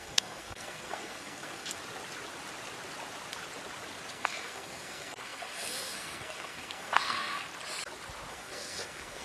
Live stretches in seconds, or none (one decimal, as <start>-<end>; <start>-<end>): 1.8-4.1; 7.5-8.3